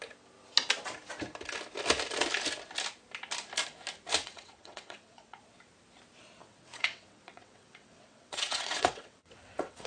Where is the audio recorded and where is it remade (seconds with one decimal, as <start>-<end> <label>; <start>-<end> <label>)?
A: 0.0-4.2 recorded; 4.2-5.4 remade; 5.4-6.4 recorded; 6.4-9.9 remade